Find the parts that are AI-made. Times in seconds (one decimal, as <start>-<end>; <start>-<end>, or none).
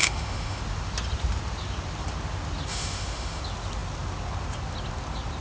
0.0-0.6; 2.7-3.4